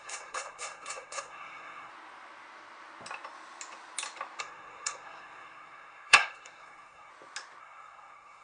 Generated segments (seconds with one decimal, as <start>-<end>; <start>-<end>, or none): 0.0-1.9; 4.4-7.1; 7.6-8.4